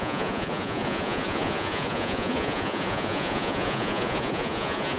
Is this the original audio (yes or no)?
no